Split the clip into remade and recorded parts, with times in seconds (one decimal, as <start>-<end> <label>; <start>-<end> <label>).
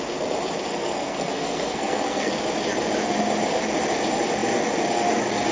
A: 0.0-0.7 recorded; 0.7-2.3 remade; 2.3-5.5 recorded